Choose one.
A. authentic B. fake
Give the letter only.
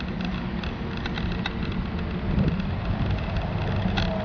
A